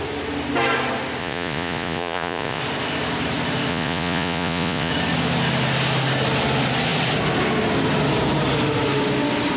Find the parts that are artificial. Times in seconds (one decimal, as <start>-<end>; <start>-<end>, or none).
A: 1.2-2.6; 3.7-4.9